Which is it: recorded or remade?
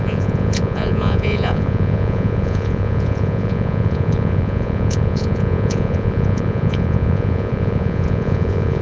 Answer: remade